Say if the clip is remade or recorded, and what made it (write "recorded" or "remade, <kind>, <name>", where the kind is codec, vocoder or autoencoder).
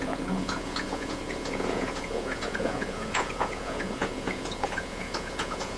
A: remade, vocoder, Vocos